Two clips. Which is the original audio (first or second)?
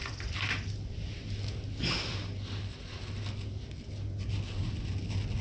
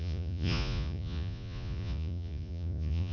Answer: first